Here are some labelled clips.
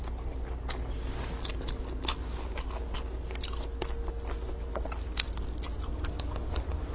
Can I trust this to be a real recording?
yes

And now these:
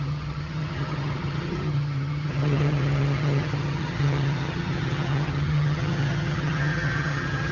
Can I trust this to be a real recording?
no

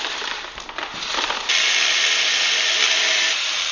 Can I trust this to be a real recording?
yes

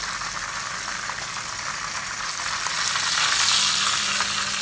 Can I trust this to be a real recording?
yes